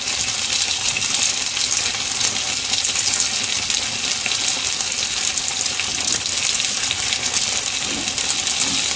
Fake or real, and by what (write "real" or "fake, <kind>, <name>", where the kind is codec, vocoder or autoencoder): real